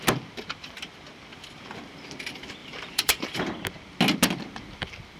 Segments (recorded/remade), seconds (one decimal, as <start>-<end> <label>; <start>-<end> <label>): 0.0-1.3 recorded; 1.3-2.1 remade; 2.1-2.6 recorded; 2.6-3.5 remade; 3.5-5.2 recorded